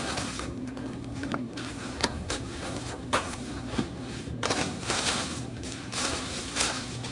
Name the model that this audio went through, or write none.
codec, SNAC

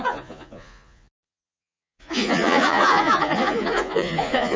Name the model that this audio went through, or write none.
vocoder, Vocos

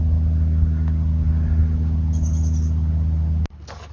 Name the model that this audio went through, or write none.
none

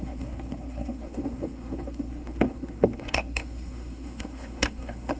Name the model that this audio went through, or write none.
codec, SNAC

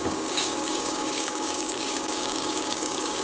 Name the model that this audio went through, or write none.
codec, DAC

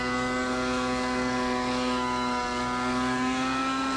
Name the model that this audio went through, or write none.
codec, DAC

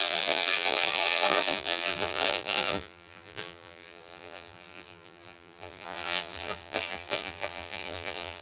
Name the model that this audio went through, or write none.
vocoder, BigVGAN v2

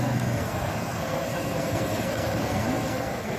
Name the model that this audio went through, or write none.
codec, SNAC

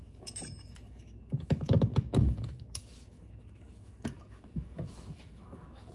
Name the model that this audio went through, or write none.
autoencoder, DAC-VAE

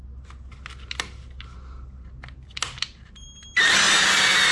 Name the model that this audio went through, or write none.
none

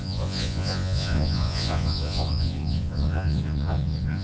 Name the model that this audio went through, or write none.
vocoder, Vocos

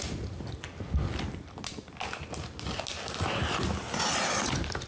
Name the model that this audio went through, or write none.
none